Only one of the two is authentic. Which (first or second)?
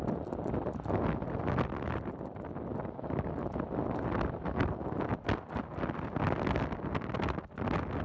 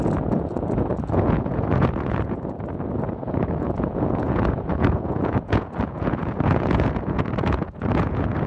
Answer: first